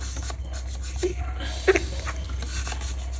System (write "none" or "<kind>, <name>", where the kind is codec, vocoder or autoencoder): none